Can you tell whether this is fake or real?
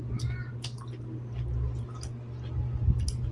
real